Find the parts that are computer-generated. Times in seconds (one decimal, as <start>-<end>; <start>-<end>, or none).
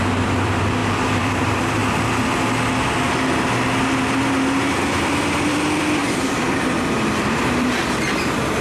0.0-1.8; 4.8-8.6